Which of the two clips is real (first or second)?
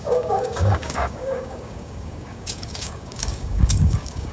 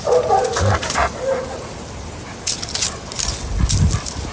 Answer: second